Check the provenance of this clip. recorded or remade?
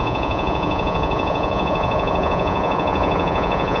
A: remade